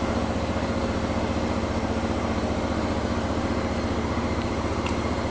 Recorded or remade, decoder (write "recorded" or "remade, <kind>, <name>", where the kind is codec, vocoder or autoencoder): remade, vocoder, BigVGAN v2